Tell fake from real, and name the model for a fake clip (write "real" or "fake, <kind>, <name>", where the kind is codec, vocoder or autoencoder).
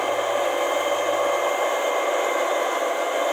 real